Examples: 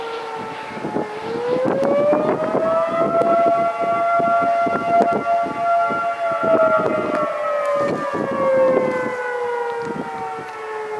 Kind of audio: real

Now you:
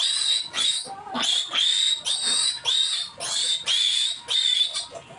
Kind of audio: real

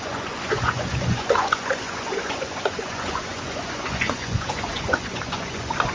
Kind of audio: fake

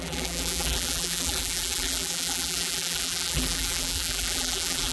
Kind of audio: fake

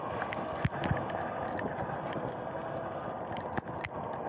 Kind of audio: real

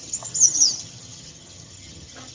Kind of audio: fake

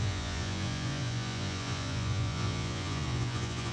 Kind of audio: fake